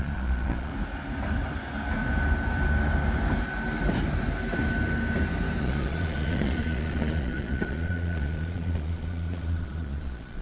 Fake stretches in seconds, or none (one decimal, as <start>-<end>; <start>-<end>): 0.0-0.7; 5.6-10.4